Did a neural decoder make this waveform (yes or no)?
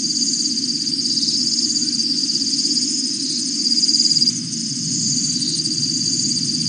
yes